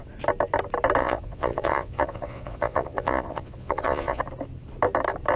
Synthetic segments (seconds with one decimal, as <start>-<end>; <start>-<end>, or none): 1.0-4.2